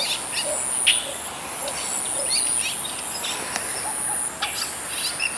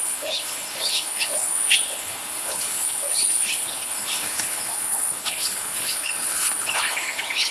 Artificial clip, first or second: second